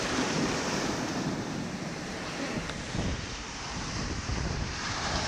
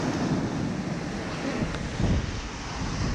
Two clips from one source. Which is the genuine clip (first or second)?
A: second